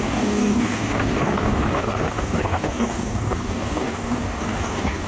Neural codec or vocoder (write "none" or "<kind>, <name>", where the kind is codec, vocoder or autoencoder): codec, DAC